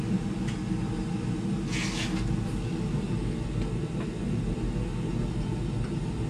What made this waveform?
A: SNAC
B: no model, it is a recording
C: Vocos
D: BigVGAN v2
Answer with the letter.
B